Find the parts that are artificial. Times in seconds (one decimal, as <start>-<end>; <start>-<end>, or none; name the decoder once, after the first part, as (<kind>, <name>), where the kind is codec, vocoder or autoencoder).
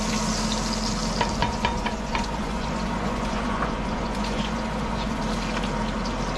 1.4-5.2 (vocoder, Vocos)